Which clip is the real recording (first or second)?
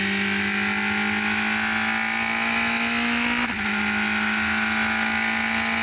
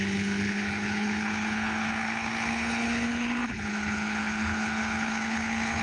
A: first